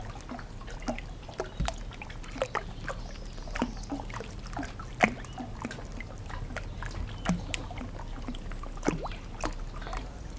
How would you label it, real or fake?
real